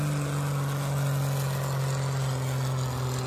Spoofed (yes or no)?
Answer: no